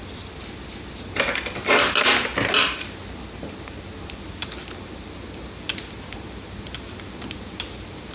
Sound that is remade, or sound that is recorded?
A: recorded